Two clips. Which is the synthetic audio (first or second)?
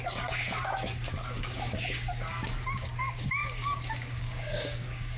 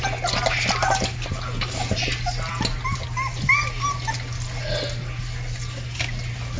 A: first